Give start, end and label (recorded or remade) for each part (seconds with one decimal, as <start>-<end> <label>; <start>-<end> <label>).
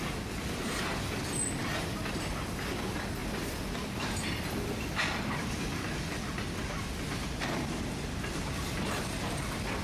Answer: 0.0-3.2 recorded; 3.2-5.8 remade; 5.8-9.8 recorded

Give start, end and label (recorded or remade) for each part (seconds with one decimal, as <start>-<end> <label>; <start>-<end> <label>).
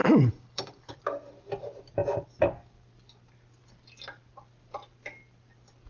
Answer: 0.0-0.9 remade; 0.9-5.9 recorded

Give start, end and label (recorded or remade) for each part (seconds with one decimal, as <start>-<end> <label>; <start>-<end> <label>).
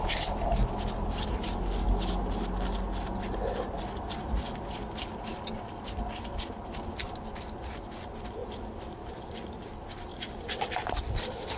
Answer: 0.0-11.6 recorded